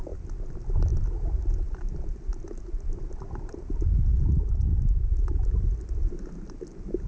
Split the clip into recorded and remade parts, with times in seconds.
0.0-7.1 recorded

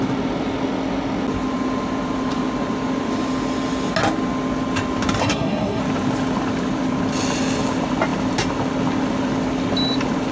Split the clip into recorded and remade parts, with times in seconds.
0.0-5.2 recorded; 5.2-5.8 remade; 5.8-10.3 recorded

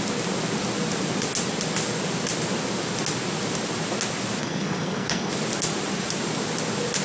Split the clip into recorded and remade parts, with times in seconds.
0.0-4.4 recorded; 4.4-5.3 remade; 5.3-7.0 recorded

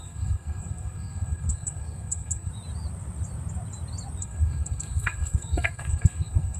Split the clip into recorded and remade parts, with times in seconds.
0.0-2.5 remade; 2.5-4.2 recorded; 4.2-6.6 remade

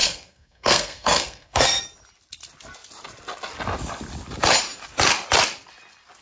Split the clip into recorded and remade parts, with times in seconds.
0.0-1.8 remade; 1.8-6.2 recorded